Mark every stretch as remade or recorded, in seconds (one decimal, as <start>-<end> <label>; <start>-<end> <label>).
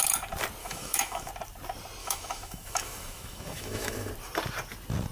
0.0-0.6 recorded; 0.6-1.3 remade; 1.3-2.0 recorded; 2.0-4.1 remade; 4.1-5.1 recorded